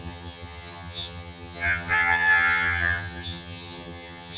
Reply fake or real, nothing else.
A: fake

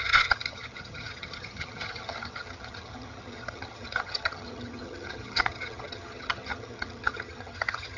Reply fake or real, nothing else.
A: fake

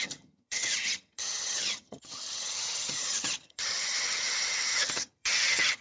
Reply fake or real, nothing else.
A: fake